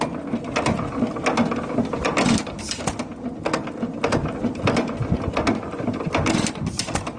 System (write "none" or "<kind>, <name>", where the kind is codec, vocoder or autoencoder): none